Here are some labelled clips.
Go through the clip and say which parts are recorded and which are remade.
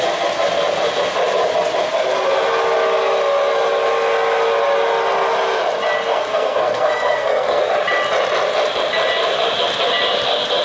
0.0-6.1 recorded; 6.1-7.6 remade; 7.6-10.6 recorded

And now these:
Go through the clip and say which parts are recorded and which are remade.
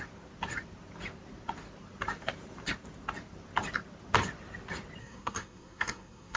0.0-5.0 recorded; 5.0-6.4 remade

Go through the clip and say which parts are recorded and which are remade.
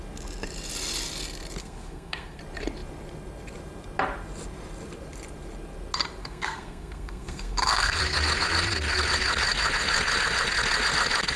0.0-1.6 recorded; 1.6-2.4 remade; 2.4-6.2 recorded; 6.2-8.0 remade; 8.0-11.4 recorded